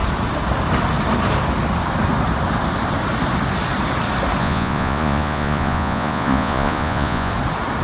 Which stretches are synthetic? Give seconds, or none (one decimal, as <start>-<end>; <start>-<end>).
4.4-7.3